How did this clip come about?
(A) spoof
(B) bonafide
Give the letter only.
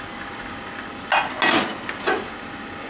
B